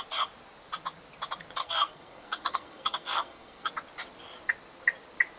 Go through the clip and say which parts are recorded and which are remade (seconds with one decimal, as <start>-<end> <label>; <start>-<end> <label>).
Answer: 0.0-1.6 recorded; 1.6-3.7 remade; 3.7-5.4 recorded